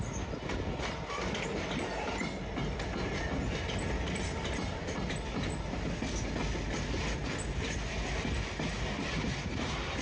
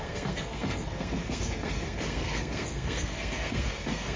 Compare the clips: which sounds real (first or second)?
first